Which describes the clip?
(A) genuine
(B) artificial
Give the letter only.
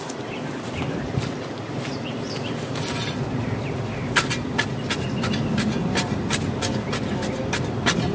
A